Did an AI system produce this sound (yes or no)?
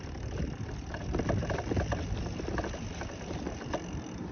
no